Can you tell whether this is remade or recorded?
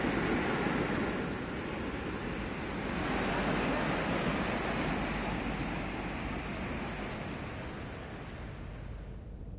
recorded